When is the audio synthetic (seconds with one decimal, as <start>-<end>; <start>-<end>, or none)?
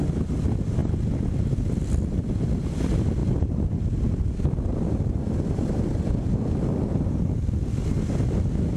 none